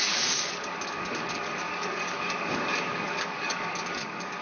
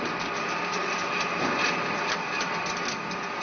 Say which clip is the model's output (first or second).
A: first